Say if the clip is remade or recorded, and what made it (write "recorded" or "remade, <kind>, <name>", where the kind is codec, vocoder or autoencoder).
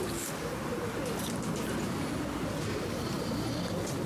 recorded